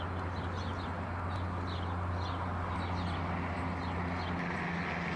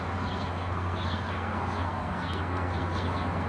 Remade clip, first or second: second